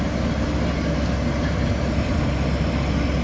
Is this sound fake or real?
real